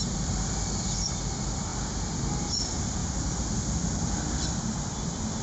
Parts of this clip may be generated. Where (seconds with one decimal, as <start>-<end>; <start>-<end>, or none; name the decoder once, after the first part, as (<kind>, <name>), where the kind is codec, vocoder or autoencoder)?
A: none